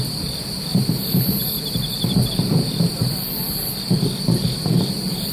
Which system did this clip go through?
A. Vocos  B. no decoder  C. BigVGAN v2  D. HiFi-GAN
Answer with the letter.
B